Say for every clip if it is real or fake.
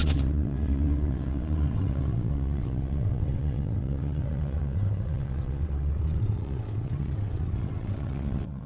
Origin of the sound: fake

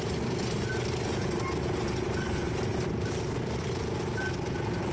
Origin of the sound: real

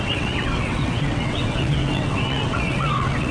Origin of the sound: fake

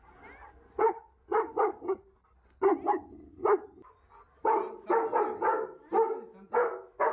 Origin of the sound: real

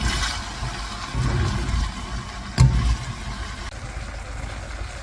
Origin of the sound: real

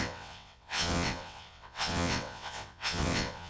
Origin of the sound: fake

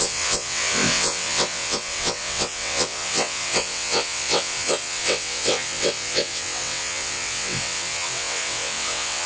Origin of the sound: fake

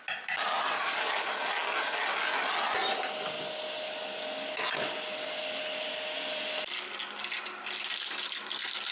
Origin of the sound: real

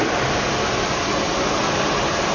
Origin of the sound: real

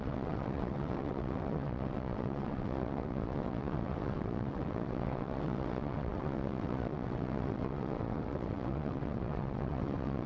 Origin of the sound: fake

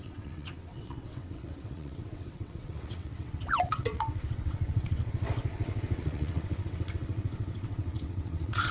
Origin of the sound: fake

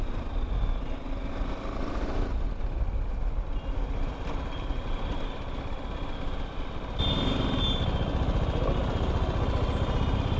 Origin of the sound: real